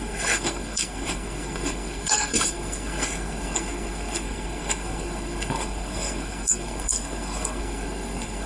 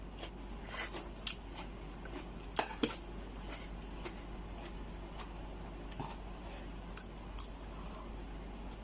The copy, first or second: first